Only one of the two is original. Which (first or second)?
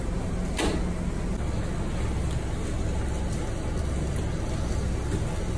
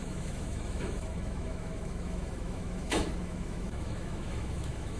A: first